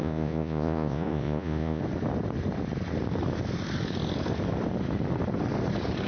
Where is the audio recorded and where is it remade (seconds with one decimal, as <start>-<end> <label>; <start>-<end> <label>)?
0.0-1.8 remade; 1.8-6.1 recorded